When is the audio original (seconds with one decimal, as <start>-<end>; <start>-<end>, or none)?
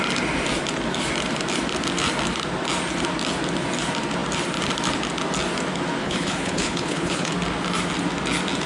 0.0-6.0; 7.3-8.7